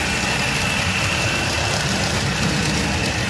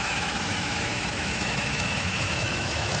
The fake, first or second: second